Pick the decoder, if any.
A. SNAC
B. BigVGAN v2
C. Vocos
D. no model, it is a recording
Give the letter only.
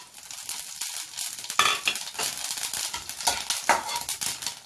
D